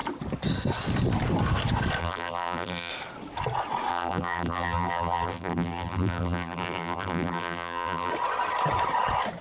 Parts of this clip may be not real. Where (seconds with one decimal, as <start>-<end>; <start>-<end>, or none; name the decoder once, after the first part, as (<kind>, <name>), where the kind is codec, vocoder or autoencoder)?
2.0-2.9 (vocoder, BigVGAN v2); 3.9-8.1